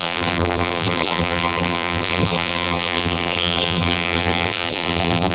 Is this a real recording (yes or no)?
no